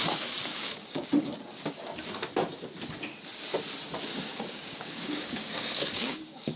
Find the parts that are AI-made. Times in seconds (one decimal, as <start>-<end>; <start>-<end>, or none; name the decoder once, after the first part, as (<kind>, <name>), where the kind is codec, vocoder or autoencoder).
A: 0.5-1.1 (codec, DAC); 4.1-6.6